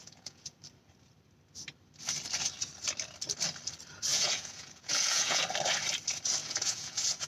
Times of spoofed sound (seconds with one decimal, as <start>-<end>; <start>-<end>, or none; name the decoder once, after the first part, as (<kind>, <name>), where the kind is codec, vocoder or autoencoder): 0.0-0.6 (vocoder, Vocos); 4.1-5.4; 6.4-7.3